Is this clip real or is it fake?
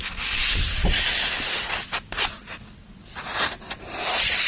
real